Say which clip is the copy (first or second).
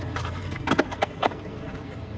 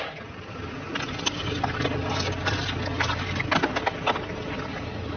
first